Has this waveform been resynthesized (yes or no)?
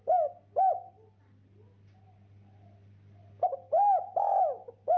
no